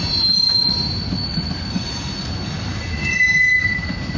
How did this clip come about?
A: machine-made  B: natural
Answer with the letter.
B